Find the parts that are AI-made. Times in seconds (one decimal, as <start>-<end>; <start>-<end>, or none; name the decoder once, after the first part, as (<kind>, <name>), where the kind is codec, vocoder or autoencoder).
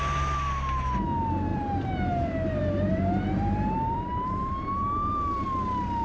1.5-5.1 (vocoder, BigVGAN v2)